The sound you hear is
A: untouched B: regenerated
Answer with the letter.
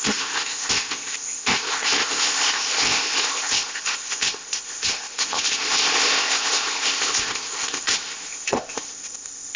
B